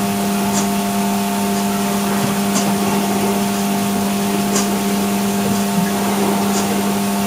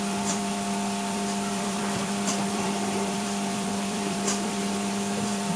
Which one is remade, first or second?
second